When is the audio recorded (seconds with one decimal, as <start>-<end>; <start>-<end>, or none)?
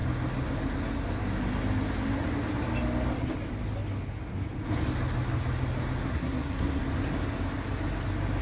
0.0-6.1; 6.8-8.4